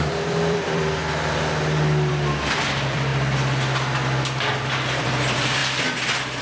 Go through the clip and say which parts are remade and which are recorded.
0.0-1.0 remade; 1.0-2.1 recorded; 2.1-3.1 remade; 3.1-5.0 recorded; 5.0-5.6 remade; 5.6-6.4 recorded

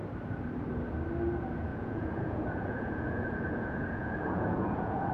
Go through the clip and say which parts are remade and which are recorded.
0.0-1.7 recorded; 1.7-5.1 remade

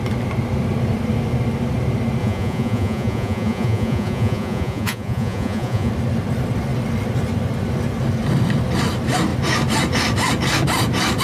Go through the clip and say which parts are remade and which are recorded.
0.0-2.2 recorded; 2.2-5.9 remade; 5.9-11.2 recorded

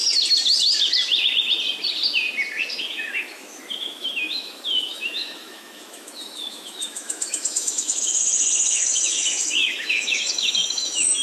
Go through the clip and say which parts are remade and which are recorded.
0.0-2.8 recorded; 2.8-11.2 remade

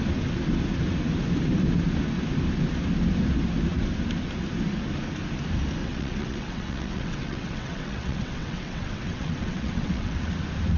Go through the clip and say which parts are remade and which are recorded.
0.0-5.8 recorded; 5.8-10.3 remade; 10.3-10.8 recorded

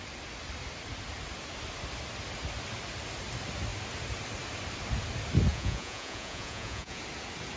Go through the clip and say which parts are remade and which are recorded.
0.0-5.5 recorded; 5.5-7.0 remade; 7.0-7.6 recorded

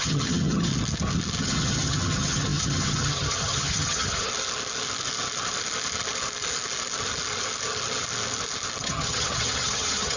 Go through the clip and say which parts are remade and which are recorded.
0.0-0.7 remade; 0.7-1.4 recorded; 1.4-4.3 remade; 4.3-8.8 recorded; 8.8-10.2 remade

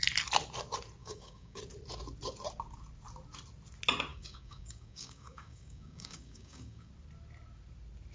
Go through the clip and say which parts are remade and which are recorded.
0.0-1.0 recorded; 1.0-1.6 remade; 1.6-4.1 recorded; 4.1-6.9 remade; 6.9-8.1 recorded